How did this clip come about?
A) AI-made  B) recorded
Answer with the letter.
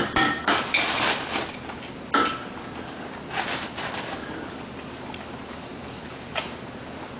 B